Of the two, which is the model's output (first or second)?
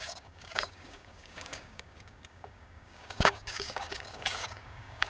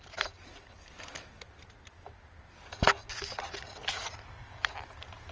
first